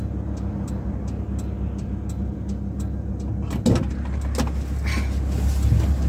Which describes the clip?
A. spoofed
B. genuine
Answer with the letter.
B